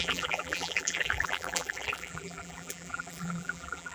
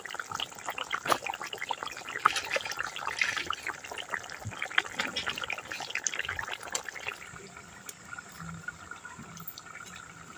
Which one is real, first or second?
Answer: second